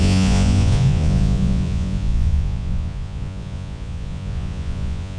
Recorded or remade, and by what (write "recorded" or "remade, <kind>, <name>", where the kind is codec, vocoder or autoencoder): remade, vocoder, Vocos